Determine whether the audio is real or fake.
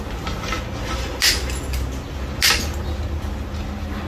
real